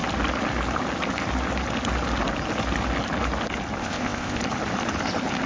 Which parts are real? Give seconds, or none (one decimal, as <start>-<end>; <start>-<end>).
0.0-3.8; 4.4-5.5